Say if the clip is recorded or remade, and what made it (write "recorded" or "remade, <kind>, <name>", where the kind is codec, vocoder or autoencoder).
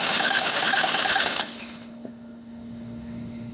remade, autoencoder, DAC-VAE